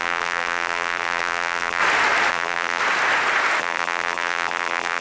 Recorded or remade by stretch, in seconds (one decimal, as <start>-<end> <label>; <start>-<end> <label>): 0.0-1.8 remade; 1.8-2.3 recorded; 2.3-2.8 remade; 2.8-3.6 recorded; 3.6-5.0 remade